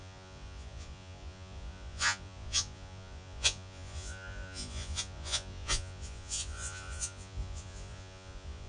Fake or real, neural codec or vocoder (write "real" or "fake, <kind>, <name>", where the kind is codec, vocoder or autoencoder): fake, vocoder, Vocos